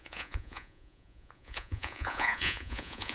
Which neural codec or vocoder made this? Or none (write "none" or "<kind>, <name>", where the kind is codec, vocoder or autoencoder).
vocoder, Vocos